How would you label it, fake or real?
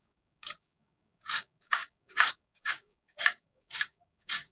fake